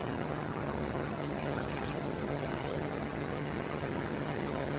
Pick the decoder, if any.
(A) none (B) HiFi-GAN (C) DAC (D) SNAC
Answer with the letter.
B